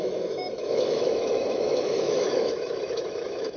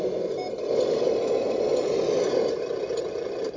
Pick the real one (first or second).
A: second